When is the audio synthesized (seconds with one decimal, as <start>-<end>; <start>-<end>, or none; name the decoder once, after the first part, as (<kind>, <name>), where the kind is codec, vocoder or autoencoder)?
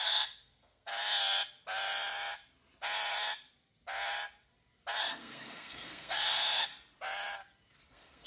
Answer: 0.0-0.9 (codec, SNAC); 5.0-6.7; 7.9-8.3